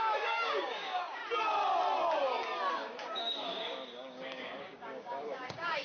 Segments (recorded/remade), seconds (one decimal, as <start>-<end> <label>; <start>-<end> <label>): 0.0-1.2 remade; 1.2-2.7 recorded; 2.7-5.8 remade